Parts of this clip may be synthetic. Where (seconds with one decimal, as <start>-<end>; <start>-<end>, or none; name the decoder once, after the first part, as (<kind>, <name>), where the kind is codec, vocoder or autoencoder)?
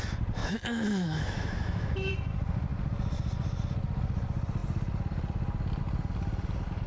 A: 0.4-2.1 (autoencoder, DAC-VAE)